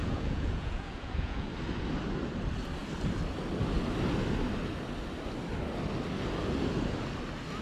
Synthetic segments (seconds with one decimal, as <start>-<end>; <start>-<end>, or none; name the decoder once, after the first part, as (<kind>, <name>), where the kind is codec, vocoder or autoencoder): 0.0-1.5 (vocoder, Vocos)